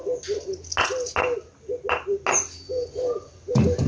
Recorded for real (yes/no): yes